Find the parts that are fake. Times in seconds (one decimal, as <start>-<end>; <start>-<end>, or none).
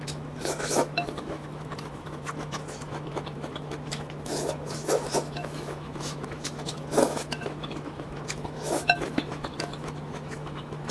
0.0-10.9